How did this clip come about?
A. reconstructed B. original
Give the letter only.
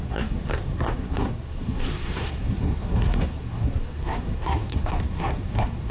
A